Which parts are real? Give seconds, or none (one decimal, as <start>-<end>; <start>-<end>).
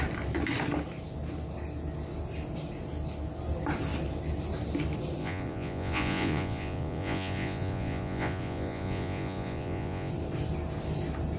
0.0-5.2; 10.1-11.4